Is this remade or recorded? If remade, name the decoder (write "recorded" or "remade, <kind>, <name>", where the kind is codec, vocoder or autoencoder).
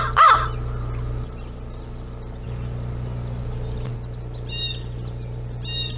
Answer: recorded